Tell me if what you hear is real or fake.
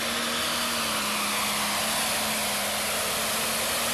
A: real